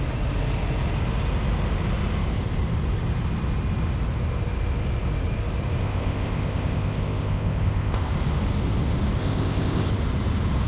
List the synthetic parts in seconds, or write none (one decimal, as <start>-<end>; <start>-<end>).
5.8-8.1; 9.2-9.9